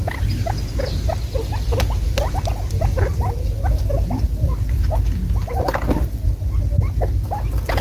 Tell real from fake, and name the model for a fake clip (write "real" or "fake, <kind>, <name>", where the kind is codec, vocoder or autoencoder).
real